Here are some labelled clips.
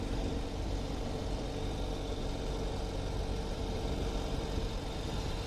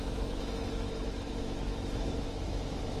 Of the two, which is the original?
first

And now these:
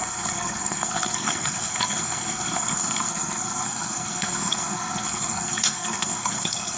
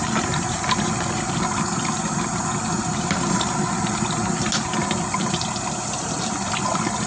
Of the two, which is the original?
second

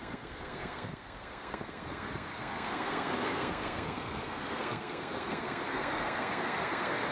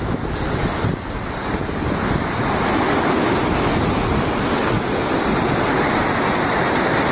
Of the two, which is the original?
second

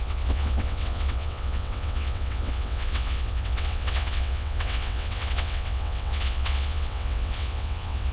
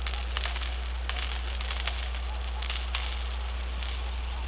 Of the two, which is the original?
second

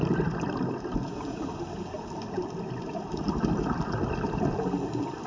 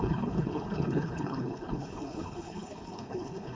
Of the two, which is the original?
first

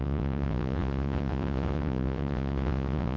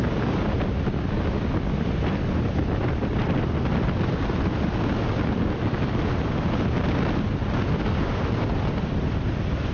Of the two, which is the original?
second